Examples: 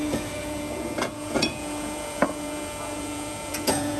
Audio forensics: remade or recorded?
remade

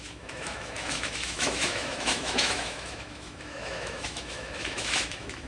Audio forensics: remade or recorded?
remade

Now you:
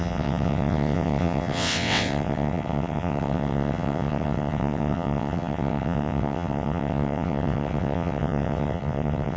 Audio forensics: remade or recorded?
remade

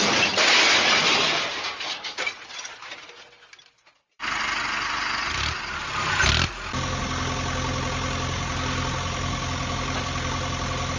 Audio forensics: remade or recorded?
recorded